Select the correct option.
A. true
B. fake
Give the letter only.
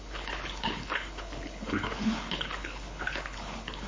B